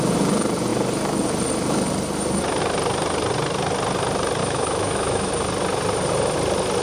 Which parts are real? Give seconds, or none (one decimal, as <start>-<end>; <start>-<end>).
0.0-4.4; 5.3-6.8